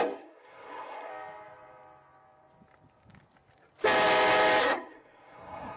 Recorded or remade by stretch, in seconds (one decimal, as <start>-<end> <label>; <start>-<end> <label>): 0.0-1.1 remade; 1.1-4.6 recorded; 4.6-5.8 remade